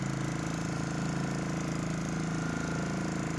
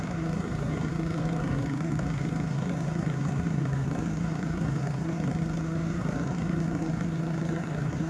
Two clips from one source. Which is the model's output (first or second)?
second